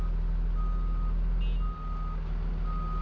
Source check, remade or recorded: recorded